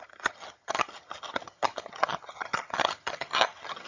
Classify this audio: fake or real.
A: fake